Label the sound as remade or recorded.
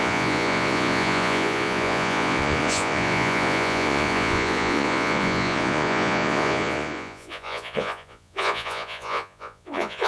remade